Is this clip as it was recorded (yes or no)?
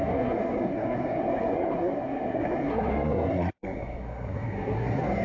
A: no